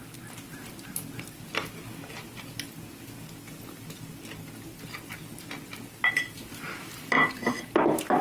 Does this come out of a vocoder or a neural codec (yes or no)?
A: no